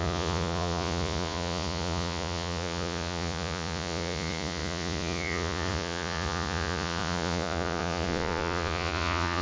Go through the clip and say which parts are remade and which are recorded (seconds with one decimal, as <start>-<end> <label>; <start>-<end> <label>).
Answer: 0.0-9.4 remade